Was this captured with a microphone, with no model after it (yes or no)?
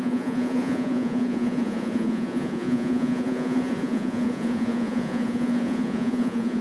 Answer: no